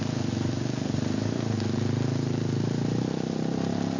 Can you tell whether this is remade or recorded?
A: recorded